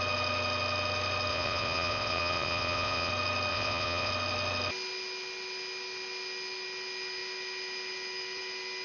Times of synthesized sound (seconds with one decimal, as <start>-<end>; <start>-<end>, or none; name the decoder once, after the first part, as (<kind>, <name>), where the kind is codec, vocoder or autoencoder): 1.3-3.1 (vocoder, Vocos); 3.5-4.1